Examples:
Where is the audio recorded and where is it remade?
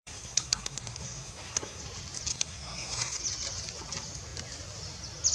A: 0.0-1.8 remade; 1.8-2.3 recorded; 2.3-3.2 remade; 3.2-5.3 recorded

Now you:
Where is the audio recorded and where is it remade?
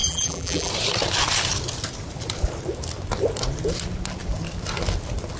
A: 0.0-0.7 remade; 0.7-5.4 recorded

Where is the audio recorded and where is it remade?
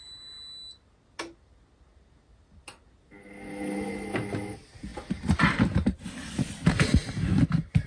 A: 0.0-7.9 recorded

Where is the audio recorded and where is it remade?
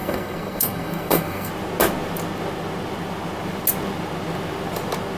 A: 0.0-1.5 remade; 1.5-5.2 recorded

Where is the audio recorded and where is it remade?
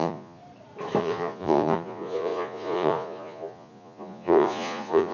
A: 0.0-0.4 remade; 0.4-1.0 recorded; 1.0-5.1 remade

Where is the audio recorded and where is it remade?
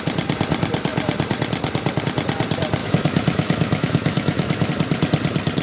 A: 0.0-2.8 recorded; 2.8-4.7 remade; 4.7-5.6 recorded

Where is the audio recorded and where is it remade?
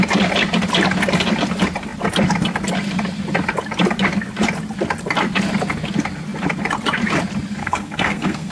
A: 0.0-7.6 recorded; 7.6-8.5 remade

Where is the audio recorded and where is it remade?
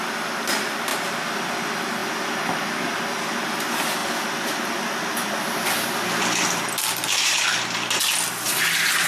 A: 0.0-9.1 recorded